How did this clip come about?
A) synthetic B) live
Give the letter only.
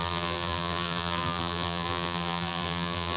A